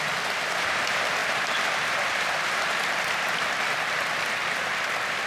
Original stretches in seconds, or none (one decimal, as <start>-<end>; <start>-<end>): none